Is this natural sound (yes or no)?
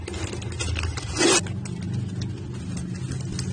yes